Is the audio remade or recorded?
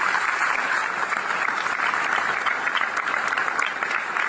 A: remade